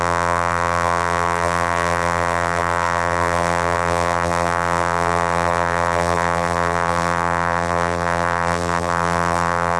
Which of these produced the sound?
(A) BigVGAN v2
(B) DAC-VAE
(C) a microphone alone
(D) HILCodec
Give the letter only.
A